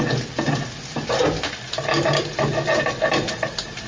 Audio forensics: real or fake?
real